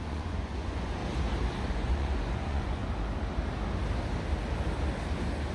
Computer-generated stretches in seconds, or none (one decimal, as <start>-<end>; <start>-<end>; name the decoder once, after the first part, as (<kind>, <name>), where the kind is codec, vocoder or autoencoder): 0.0-1.0 (vocoder, Vocos); 1.7-2.8